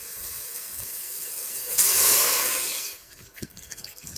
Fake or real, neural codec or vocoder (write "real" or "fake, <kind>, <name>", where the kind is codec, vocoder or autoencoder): fake, codec, SNAC